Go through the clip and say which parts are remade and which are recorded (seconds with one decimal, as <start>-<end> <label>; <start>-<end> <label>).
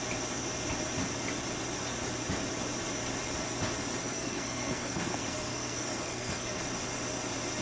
0.0-4.0 recorded; 4.0-6.6 remade; 6.6-7.6 recorded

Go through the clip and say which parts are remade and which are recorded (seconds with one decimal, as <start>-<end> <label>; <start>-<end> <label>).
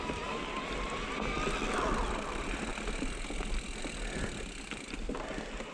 0.0-5.7 recorded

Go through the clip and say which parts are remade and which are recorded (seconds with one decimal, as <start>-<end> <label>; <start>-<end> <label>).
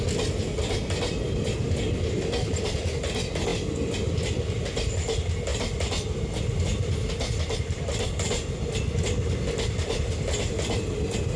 0.0-11.4 recorded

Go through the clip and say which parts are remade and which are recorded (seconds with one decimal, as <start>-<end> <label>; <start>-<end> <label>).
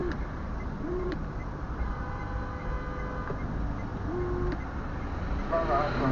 0.0-2.6 remade; 2.6-6.1 recorded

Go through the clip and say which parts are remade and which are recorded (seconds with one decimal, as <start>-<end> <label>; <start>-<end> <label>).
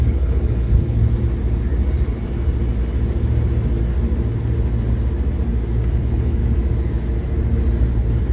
0.0-1.0 remade; 1.0-6.0 recorded; 6.0-6.4 remade; 6.4-7.9 recorded; 7.9-8.3 remade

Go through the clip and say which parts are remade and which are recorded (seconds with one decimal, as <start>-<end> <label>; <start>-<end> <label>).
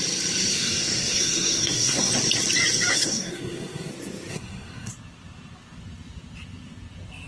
0.0-0.5 recorded; 0.5-2.1 remade; 2.1-2.9 recorded; 2.9-3.9 remade; 3.9-4.3 recorded; 4.3-4.9 remade; 4.9-7.3 recorded